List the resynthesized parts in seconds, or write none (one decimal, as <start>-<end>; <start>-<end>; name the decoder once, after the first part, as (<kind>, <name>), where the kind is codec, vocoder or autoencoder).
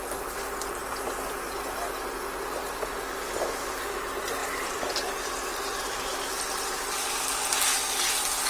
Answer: 0.8-1.6 (vocoder, BigVGAN v2); 2.6-3.9; 4.4-6.8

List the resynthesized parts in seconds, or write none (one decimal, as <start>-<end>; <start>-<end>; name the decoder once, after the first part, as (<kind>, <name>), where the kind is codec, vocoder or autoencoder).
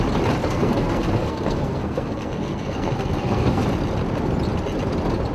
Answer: 0.4-3.6 (codec, SNAC)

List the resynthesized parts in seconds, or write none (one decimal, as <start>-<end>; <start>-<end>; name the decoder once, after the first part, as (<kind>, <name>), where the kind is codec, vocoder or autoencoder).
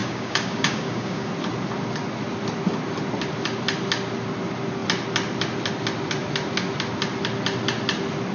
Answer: 0.0-1.3 (codec, DAC)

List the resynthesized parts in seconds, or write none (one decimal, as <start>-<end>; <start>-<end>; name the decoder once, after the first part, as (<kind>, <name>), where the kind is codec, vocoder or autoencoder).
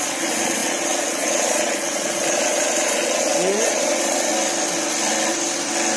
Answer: 0.0-4.3 (vocoder, Vocos)